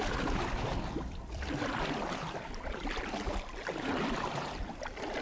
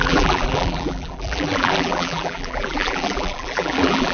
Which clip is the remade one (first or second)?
second